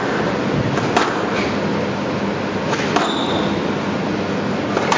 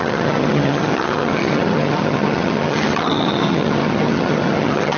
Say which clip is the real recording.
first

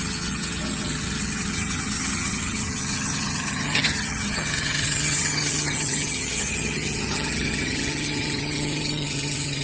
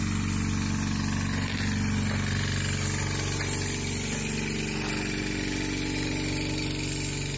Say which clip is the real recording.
second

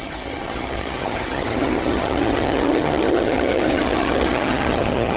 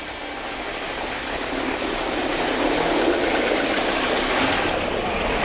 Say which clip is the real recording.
second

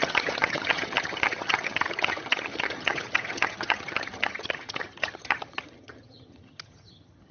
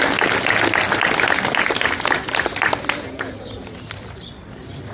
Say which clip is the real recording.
second